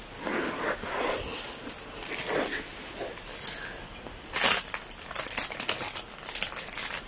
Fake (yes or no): no